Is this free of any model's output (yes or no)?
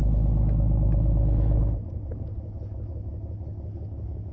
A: yes